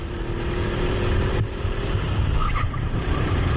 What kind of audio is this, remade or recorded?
remade